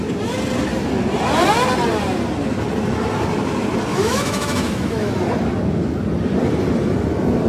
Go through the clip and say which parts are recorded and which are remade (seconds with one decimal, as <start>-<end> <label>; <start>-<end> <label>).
0.0-3.9 recorded; 3.9-5.1 remade; 5.1-7.5 recorded